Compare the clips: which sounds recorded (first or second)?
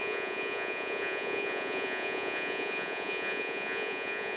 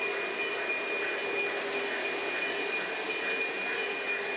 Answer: second